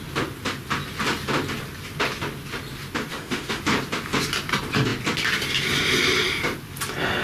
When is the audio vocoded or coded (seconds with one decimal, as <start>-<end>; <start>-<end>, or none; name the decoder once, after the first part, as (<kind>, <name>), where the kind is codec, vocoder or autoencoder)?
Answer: 3.1-3.6 (autoencoder, DAC-VAE)